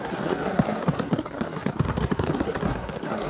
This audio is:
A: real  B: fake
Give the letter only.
B